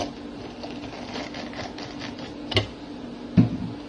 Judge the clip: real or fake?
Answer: real